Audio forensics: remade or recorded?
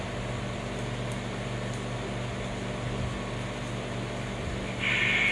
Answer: recorded